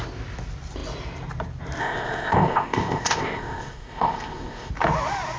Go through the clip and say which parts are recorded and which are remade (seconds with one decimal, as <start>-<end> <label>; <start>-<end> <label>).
0.0-1.8 recorded; 1.8-4.7 remade; 4.7-5.4 recorded